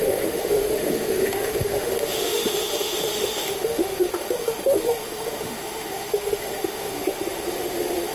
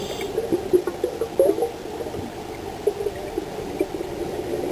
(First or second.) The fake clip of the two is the first